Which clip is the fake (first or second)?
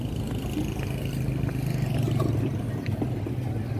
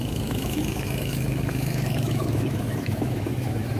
second